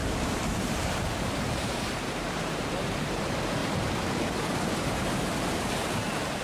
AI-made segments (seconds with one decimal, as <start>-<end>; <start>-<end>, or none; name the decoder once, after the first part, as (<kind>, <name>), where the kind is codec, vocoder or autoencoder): 0.0-3.6 (vocoder, BigVGAN v2); 4.2-6.4